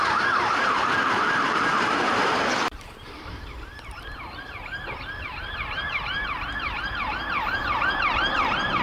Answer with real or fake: fake